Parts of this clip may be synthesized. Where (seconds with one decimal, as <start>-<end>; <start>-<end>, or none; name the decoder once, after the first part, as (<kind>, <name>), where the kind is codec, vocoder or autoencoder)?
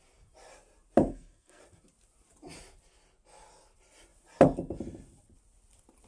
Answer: 1.1-1.6 (codec, SNAC)